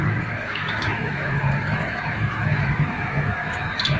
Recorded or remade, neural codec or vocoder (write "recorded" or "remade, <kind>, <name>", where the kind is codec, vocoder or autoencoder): remade, autoencoder, DAC-VAE